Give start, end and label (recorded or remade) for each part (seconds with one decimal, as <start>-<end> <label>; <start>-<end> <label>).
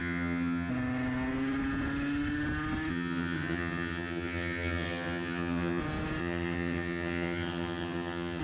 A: 0.0-0.7 remade; 0.7-2.9 recorded; 2.9-5.8 remade; 5.8-6.2 recorded; 6.2-8.4 remade